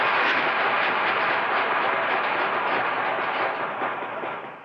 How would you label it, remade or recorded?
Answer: recorded